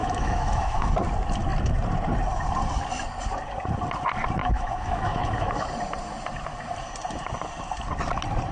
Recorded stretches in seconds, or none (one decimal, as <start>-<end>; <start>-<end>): 0.9-4.4; 5.7-8.5